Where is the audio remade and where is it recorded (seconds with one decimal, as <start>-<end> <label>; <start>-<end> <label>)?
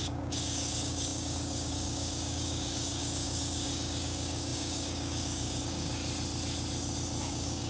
0.0-6.0 remade; 6.0-7.2 recorded; 7.2-7.7 remade